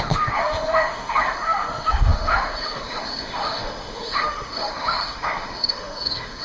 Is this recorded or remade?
remade